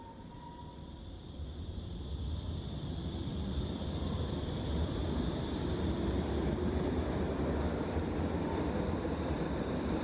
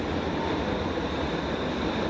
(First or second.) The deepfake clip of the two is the first